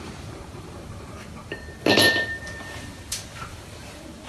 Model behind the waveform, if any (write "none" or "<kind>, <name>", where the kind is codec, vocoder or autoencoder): vocoder, BigVGAN v2